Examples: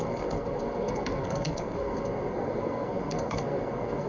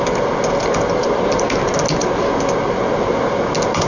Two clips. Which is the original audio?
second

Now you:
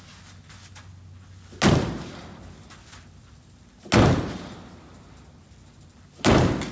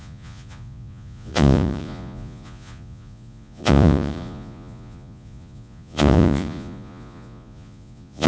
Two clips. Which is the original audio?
first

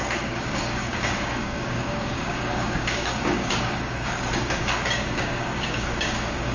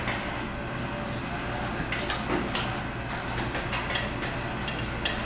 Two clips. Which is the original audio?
second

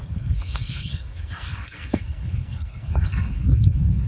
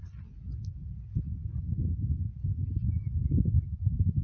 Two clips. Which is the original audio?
second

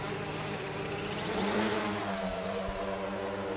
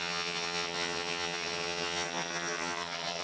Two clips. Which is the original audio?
first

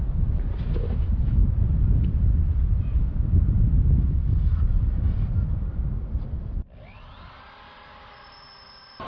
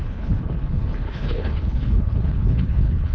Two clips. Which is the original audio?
first